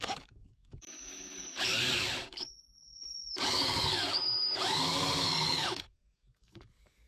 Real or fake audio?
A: fake